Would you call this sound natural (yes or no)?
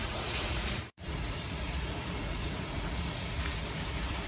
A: no